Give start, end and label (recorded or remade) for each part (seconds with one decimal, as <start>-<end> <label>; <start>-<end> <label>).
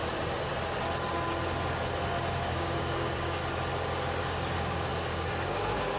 0.0-2.3 recorded; 2.3-3.4 remade; 3.4-4.2 recorded; 4.2-6.0 remade